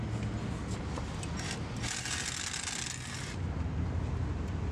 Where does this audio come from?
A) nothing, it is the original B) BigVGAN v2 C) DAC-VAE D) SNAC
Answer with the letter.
A